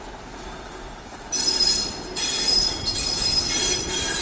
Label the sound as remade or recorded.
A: recorded